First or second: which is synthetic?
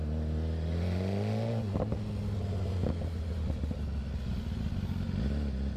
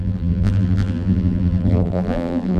second